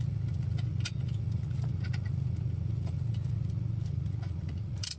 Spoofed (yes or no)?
yes